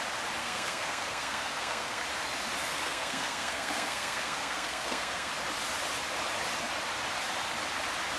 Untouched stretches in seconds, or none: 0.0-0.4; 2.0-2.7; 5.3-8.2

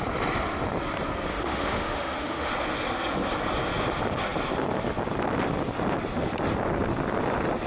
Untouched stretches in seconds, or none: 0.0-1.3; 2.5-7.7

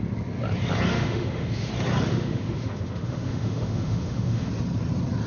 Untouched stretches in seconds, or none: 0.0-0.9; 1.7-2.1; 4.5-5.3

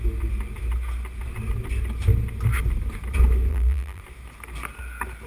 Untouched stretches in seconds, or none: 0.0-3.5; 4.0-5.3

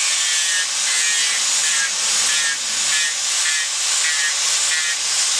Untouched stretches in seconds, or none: 0.0-5.4

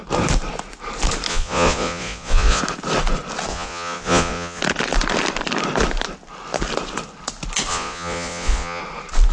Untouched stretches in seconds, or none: 0.0-1.3; 2.6-3.5; 4.6-7.7; 8.8-9.3

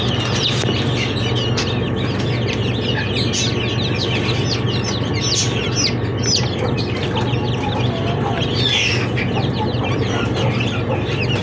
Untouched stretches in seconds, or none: 0.0-11.4

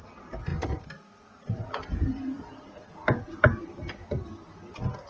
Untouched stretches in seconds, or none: 0.0-5.1